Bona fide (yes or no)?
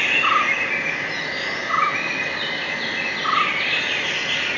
yes